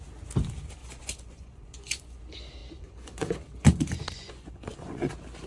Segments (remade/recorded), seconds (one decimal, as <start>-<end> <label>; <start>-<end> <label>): 0.0-0.8 recorded; 0.8-2.2 remade; 2.2-2.6 recorded; 2.6-5.1 remade; 5.1-5.5 recorded